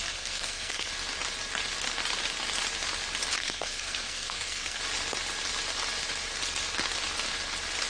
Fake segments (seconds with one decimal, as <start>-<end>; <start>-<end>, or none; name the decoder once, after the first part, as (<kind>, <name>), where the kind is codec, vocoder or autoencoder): 0.0-0.9 (codec, SNAC); 3.4-4.8

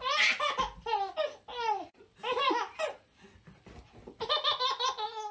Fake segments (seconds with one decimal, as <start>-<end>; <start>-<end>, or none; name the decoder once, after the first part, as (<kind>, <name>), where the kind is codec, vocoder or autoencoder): none

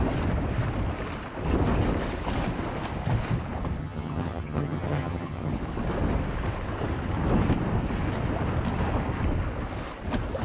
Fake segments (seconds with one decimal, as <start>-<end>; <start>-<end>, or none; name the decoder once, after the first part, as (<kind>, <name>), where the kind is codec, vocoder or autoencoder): 3.8-5.5 (vocoder, HiFi-GAN)

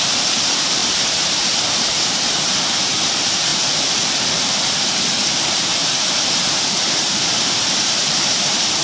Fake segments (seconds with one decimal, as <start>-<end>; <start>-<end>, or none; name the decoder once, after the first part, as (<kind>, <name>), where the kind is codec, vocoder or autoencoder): 0.0-8.8 (vocoder, BigVGAN v2)